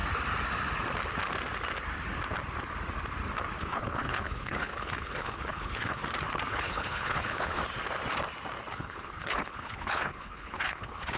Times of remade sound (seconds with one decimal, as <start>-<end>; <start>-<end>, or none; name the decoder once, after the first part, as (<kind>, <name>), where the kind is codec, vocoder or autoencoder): 3.6-6.0 (codec, HILCodec); 6.5-7.6; 8.7-11.2